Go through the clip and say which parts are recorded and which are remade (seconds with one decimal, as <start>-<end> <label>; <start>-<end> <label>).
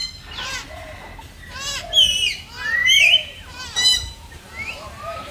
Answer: 0.0-2.8 recorded; 2.8-5.3 remade